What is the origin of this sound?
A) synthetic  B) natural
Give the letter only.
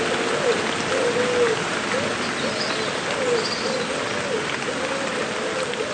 B